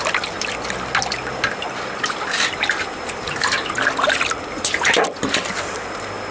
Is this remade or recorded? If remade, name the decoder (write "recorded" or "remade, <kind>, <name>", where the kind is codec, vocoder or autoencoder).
recorded